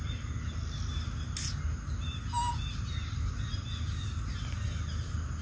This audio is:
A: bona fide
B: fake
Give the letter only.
A